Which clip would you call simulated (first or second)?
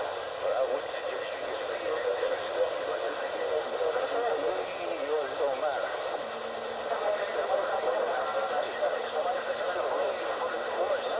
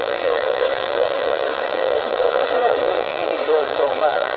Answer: second